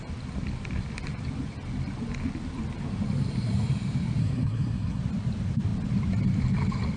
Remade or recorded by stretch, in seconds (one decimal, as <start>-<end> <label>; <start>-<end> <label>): 0.0-4.2 recorded; 4.2-5.0 remade; 5.0-7.0 recorded